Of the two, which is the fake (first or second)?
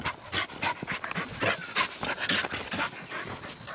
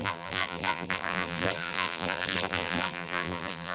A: second